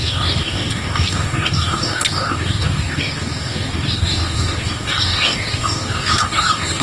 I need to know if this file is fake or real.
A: fake